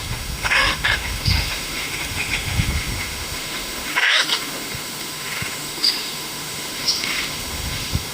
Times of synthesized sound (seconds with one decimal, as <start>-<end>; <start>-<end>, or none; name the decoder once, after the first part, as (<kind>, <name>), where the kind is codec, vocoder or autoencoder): 0.0-8.1 (autoencoder, DAC-VAE)